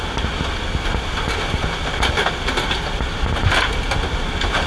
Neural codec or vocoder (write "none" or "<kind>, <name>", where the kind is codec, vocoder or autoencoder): none